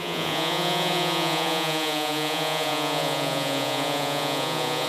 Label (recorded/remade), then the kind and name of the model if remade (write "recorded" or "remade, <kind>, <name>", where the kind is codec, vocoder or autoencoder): remade, vocoder, Vocos